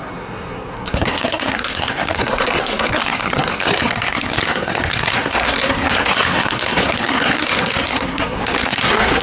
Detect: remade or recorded remade